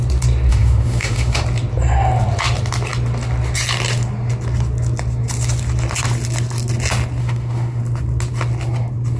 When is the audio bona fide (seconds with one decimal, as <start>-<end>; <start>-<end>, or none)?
0.0-0.5; 1.4-7.2; 7.8-9.2